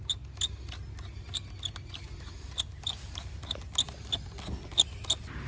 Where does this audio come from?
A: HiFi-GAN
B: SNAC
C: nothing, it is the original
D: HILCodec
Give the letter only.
C